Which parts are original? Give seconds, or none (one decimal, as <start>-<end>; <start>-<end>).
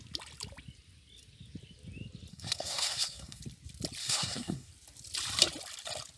0.0-2.3; 3.4-4.0; 4.7-6.2